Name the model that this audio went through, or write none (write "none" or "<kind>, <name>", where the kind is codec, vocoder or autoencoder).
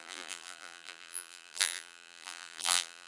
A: vocoder, BigVGAN v2